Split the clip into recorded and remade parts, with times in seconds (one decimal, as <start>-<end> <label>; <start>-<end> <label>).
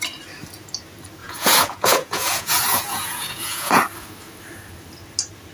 0.0-1.2 recorded; 1.2-3.8 remade; 3.8-5.5 recorded